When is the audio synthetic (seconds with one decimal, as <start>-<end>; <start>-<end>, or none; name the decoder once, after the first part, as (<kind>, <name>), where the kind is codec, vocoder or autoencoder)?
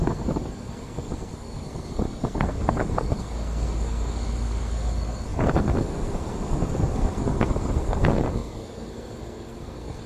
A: 0.0-10.1 (codec, SNAC)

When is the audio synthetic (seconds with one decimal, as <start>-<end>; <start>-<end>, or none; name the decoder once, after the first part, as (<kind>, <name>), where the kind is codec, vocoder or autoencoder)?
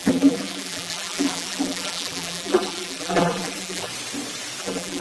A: 0.0-3.9 (vocoder, BigVGAN v2); 4.6-5.0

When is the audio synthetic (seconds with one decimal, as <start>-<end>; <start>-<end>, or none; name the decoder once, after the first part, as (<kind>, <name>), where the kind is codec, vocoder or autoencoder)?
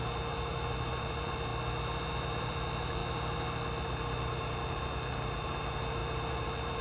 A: 0.0-1.5 (vocoder, BigVGAN v2); 2.4-3.0; 3.8-6.8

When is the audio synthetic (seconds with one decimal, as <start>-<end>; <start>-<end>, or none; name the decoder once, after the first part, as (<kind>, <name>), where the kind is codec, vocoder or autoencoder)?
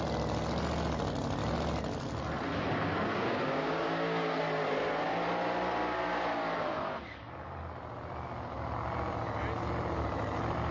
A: 3.1-4.4 (codec, DAC)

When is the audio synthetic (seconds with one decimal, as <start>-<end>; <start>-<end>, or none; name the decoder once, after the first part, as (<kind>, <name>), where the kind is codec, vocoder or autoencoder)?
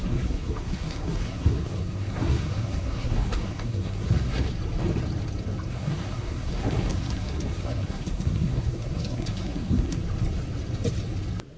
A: 0.0-4.5 (codec, SNAC); 5.7-10.0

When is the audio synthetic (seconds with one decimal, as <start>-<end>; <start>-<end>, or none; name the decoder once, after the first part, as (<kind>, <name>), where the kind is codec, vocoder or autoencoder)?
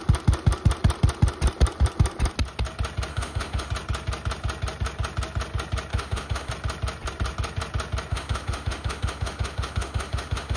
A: 3.1-3.7 (autoencoder, DAC-VAE); 5.9-6.5; 8.1-10.6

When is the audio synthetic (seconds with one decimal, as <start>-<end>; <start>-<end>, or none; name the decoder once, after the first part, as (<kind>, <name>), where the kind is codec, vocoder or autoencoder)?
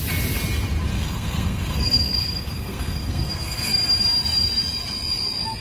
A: 0.9-3.7 (codec, SNAC)